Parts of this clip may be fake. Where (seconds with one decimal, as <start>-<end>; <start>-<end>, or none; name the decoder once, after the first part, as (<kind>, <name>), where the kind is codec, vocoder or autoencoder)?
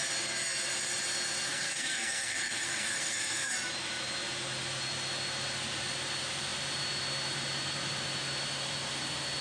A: 1.5-3.5 (codec, SNAC)